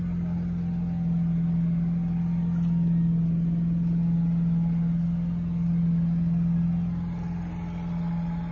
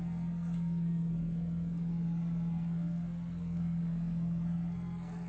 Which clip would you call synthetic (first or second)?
second